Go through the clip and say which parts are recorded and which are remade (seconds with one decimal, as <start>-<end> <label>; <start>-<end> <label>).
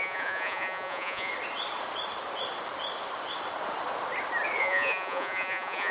0.0-1.3 remade; 1.3-4.6 recorded; 4.6-5.9 remade